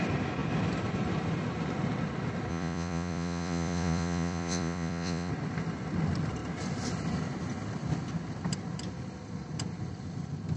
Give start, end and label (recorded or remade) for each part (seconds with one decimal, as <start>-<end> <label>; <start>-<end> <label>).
0.0-2.5 recorded; 2.5-5.3 remade; 5.3-10.6 recorded